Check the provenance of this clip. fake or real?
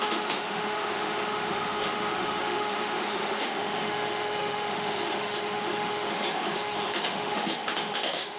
fake